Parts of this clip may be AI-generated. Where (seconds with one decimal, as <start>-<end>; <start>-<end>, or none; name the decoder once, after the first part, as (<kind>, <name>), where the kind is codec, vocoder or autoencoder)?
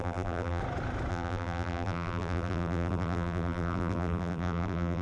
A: 0.0-0.6 (vocoder, BigVGAN v2); 1.1-5.0